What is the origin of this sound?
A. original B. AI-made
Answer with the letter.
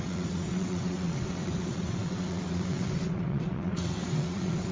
B